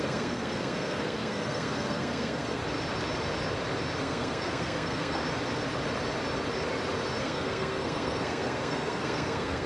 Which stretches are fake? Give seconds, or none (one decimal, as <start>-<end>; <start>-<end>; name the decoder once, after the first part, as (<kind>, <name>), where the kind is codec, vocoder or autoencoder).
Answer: 0.0-2.6 (codec, SNAC); 4.0-5.2; 7.2-9.7